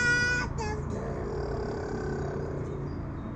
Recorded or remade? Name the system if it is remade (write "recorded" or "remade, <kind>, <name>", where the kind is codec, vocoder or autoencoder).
recorded